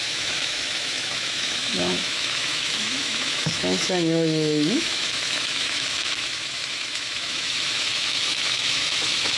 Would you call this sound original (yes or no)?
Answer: no